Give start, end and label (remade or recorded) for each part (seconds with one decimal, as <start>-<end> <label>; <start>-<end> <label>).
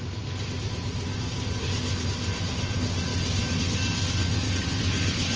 0.0-5.4 recorded